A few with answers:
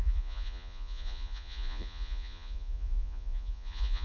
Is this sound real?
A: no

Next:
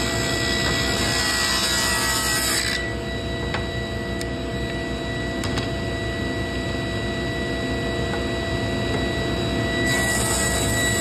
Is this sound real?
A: yes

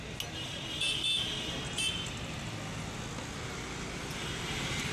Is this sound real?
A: yes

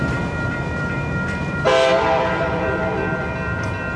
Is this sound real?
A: no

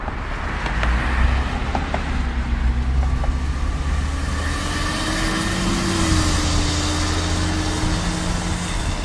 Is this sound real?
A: yes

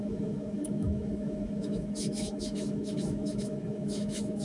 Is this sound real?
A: no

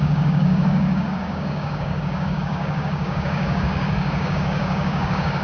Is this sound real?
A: no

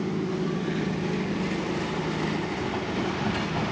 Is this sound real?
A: yes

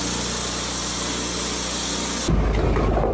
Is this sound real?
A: yes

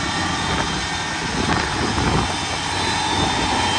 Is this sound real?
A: yes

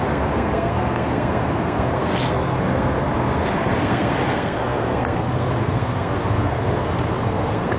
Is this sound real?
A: no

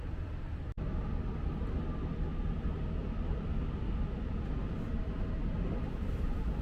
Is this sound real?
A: yes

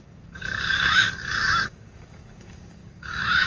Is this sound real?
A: no